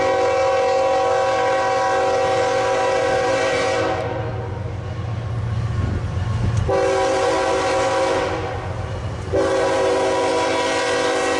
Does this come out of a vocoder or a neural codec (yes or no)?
no